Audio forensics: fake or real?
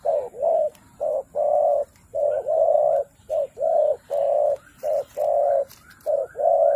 fake